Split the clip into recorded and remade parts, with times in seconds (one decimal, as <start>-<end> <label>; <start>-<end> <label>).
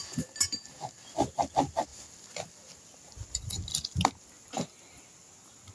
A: 0.0-5.7 recorded